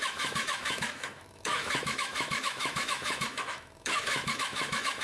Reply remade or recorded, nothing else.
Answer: remade